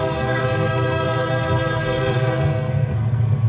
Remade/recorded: remade